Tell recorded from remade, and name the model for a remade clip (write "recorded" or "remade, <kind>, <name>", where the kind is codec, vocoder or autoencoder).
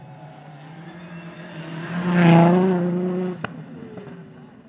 recorded